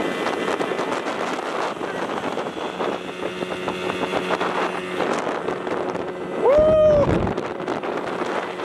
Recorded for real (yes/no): yes